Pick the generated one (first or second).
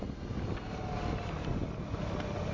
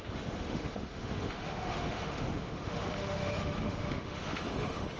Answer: second